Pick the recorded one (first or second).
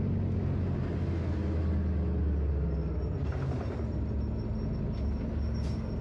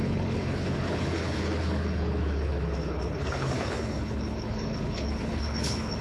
first